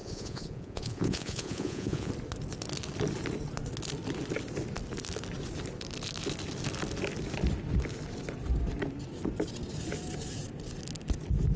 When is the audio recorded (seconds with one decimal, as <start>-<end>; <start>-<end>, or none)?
2.1-11.6